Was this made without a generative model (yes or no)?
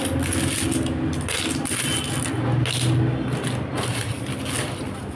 yes